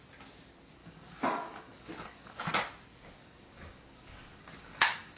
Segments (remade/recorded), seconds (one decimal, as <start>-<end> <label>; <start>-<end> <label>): 0.0-0.8 recorded; 0.8-2.4 remade; 2.4-3.2 recorded; 3.2-5.2 remade